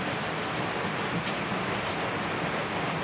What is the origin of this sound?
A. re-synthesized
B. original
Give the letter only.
B